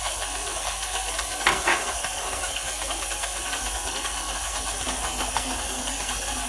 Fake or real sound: fake